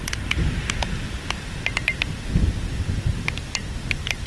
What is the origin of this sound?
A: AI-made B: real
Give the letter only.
B